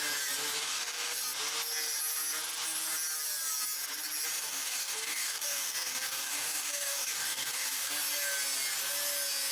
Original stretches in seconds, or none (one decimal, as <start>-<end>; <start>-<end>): 0.0-0.6; 1.2-4.4; 7.9-9.5